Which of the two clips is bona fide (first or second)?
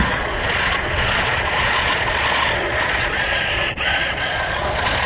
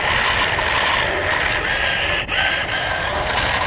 second